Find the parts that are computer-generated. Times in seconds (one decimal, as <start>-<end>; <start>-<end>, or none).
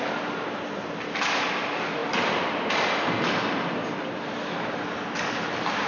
none